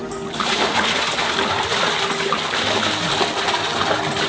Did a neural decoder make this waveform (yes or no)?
no